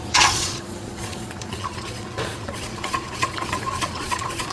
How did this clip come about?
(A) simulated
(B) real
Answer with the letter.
A